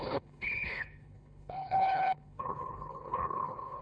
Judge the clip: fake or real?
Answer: fake